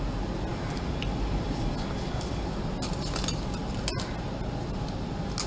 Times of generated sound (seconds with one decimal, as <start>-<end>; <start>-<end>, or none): none